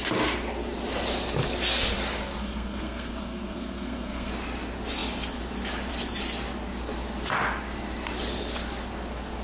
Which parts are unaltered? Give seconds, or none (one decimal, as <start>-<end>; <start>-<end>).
0.0-2.4; 4.3-9.4